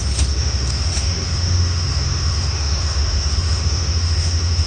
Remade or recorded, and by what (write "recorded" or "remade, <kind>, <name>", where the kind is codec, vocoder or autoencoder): remade, autoencoder, DAC-VAE